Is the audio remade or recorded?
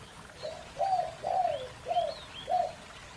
recorded